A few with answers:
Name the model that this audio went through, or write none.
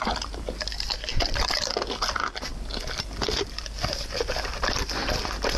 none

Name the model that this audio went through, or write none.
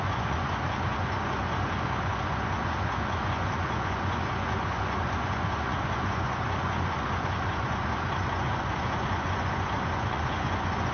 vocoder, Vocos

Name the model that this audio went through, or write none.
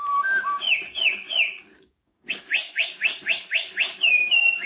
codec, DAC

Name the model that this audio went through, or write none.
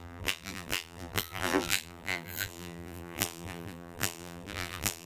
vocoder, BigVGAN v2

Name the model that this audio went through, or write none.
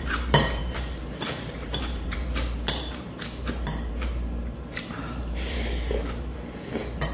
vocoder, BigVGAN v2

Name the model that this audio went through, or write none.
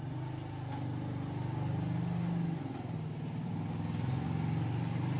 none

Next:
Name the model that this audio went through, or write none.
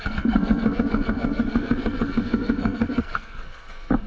codec, SNAC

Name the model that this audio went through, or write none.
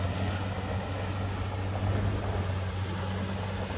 none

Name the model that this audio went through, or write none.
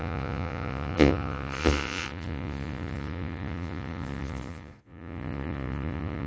vocoder, Vocos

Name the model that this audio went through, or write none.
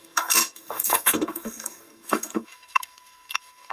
codec, SNAC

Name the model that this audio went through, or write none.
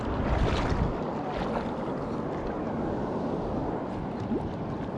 none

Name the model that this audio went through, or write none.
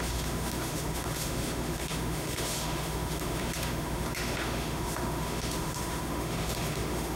autoencoder, DAC-VAE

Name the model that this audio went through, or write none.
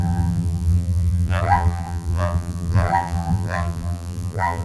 vocoder, BigVGAN v2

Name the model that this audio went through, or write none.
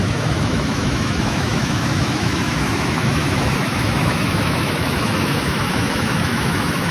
autoencoder, DAC-VAE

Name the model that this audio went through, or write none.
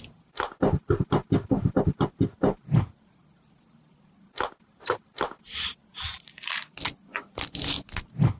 none